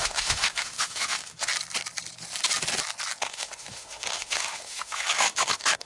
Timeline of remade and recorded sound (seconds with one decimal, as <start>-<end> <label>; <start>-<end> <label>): 0.0-1.5 remade; 1.5-3.2 recorded; 3.2-5.9 remade